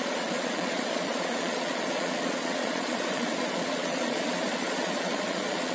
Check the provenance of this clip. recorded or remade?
remade